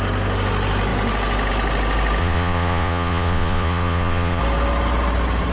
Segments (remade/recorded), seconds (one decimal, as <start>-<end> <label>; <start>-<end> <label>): 0.0-2.2 recorded; 2.2-4.4 remade; 4.4-5.5 recorded